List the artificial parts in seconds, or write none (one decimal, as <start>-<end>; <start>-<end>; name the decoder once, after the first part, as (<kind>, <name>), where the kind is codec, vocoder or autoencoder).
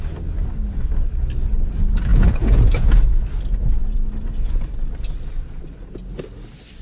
2.1-2.9 (vocoder, Vocos)